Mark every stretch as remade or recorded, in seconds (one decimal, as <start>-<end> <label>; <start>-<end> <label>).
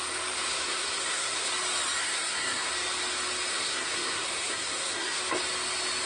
0.0-0.5 recorded; 0.5-1.5 remade; 1.5-2.0 recorded; 2.0-2.7 remade; 2.7-3.5 recorded; 3.5-5.2 remade; 5.2-6.1 recorded